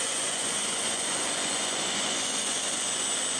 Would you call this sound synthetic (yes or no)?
yes